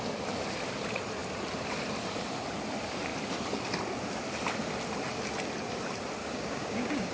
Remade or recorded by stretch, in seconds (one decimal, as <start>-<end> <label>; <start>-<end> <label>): 0.0-6.2 recorded; 6.2-7.1 remade